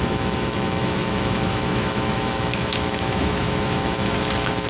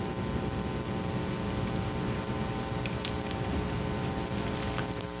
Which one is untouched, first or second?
second